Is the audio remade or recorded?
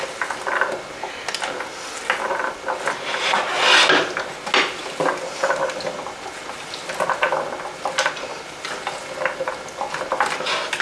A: recorded